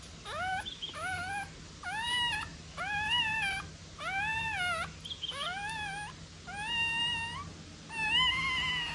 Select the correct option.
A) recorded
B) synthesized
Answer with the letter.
A